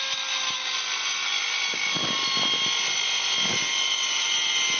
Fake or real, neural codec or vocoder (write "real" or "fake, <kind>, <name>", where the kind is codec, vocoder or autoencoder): real